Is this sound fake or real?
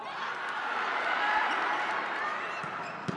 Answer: real